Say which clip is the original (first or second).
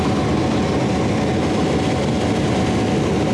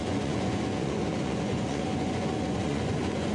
first